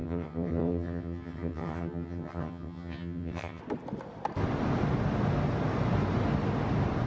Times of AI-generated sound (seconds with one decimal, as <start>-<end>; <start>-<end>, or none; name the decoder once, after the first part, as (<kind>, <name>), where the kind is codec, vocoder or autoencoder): 0.0-3.6 (vocoder, HiFi-GAN)